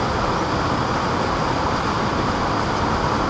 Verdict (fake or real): real